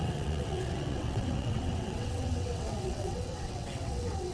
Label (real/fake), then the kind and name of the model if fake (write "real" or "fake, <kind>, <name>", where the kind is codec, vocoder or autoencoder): fake, vocoder, WaveNeXt